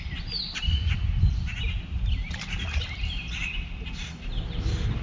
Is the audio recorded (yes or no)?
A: yes